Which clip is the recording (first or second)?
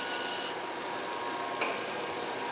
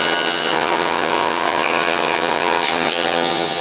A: first